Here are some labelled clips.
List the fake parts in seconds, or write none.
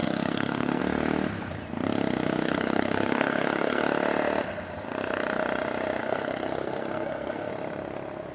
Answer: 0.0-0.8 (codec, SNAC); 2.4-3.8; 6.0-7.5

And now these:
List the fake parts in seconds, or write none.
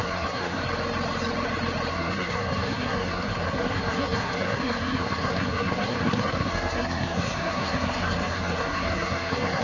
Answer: 0.0-0.6 (codec, SNAC); 1.9-9.6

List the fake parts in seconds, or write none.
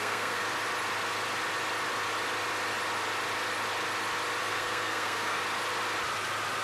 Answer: 0.0-0.4 (codec, SNAC); 4.4-5.4